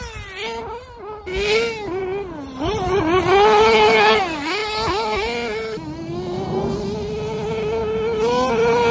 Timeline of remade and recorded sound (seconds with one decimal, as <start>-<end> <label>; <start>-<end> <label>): 0.0-8.9 recorded